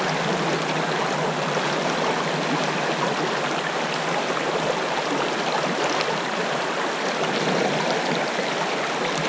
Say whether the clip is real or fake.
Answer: real